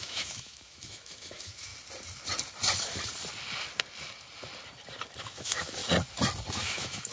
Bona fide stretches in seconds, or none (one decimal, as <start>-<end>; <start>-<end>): 1.7-5.2; 5.8-6.5